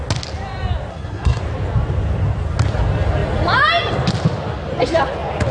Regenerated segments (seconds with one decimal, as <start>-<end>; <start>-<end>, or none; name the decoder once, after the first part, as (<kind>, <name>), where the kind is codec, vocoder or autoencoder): 0.9-1.4 (codec, SNAC)

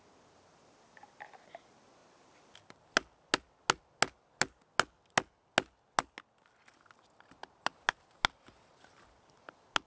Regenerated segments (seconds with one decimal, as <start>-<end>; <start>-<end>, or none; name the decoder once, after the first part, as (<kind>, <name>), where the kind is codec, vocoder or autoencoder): none